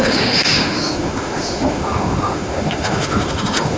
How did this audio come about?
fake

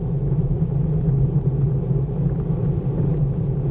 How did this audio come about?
real